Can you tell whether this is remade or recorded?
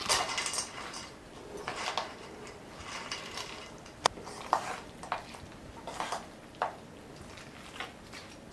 recorded